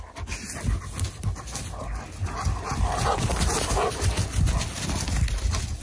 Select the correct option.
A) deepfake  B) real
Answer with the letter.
B